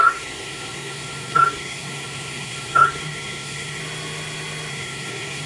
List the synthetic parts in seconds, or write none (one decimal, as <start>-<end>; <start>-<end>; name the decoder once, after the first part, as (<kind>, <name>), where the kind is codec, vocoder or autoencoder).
0.0-3.8 (codec, SNAC); 4.7-5.5